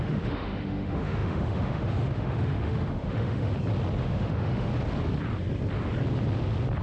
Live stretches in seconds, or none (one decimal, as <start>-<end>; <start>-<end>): 3.5-4.0; 4.7-6.8